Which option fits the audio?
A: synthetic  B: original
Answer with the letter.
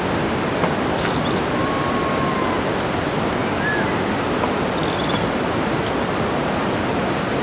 B